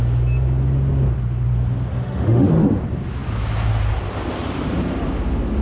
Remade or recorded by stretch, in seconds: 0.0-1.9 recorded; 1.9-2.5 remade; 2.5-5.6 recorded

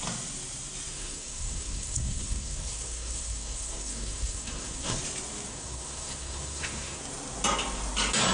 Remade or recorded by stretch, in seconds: 0.0-0.9 recorded; 0.9-5.0 remade; 5.0-5.5 recorded; 5.5-7.0 remade; 7.0-8.3 recorded

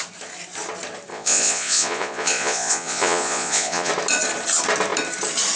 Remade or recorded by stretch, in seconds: 0.0-1.1 recorded; 1.1-3.9 remade; 3.9-5.6 recorded

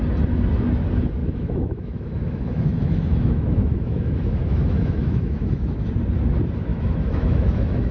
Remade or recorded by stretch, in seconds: 0.0-1.2 recorded; 1.2-5.9 remade; 5.9-6.7 recorded; 6.7-7.9 remade

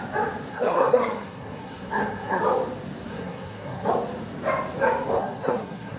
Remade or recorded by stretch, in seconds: 0.0-0.5 recorded; 0.5-2.4 remade; 2.4-3.1 recorded; 3.1-3.9 remade; 3.9-5.2 recorded; 5.2-6.0 remade

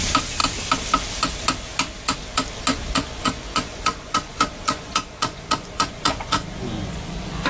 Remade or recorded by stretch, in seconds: 0.0-2.7 recorded; 2.7-7.5 remade

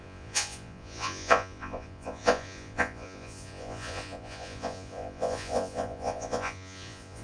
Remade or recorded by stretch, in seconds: 0.0-7.2 remade